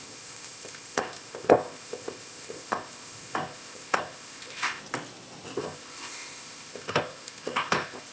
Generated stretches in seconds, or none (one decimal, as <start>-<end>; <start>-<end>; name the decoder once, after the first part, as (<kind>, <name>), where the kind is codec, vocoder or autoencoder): 0.0-4.8 (codec, ZipCodec); 5.6-8.1

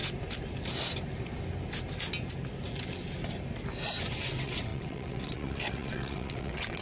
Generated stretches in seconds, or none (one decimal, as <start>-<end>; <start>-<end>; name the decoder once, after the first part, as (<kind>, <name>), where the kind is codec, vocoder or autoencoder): 4.1-6.8 (vocoder, WaveNeXt)